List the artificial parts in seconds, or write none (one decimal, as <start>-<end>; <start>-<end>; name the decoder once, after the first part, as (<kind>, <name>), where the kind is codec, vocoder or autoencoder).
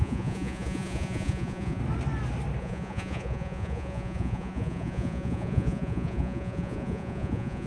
0.0-1.8 (vocoder, Vocos); 2.6-7.7